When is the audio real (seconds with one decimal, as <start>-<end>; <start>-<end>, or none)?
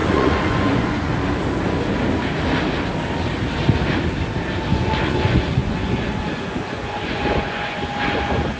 1.1-4.7